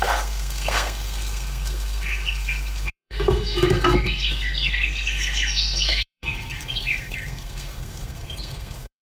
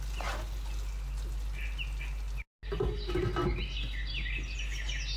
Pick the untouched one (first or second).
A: second